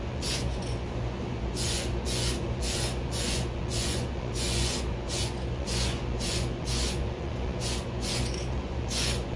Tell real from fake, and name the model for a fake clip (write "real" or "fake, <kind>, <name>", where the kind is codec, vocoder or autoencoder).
fake, vocoder, Vocos